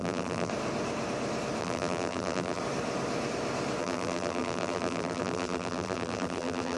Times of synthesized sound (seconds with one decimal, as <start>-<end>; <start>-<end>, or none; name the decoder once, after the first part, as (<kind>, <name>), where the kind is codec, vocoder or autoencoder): 0.0-0.5 (vocoder, BigVGAN v2); 1.6-2.6; 3.8-6.8